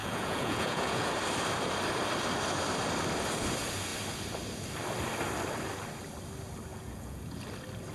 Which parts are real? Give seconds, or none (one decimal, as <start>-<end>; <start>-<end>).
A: 1.1-6.7; 7.4-7.9